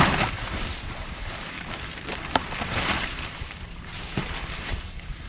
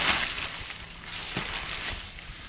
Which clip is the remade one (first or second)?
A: first